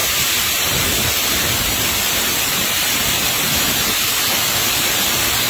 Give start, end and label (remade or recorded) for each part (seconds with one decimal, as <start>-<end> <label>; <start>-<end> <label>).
0.0-1.6 remade; 1.6-3.0 recorded; 3.0-5.5 remade

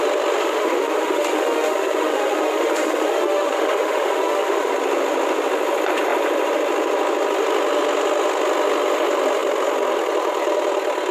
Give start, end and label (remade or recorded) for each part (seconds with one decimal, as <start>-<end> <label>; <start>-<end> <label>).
0.0-0.4 recorded; 0.4-4.7 remade; 4.7-11.1 recorded

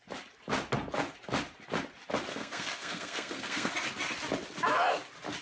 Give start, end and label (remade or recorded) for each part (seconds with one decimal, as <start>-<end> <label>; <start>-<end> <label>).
0.0-2.3 recorded; 2.3-3.7 remade; 3.7-5.4 recorded